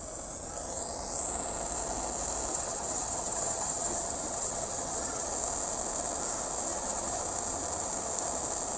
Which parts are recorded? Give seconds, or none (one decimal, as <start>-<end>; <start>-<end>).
0.0-2.5; 5.3-6.7; 7.2-8.8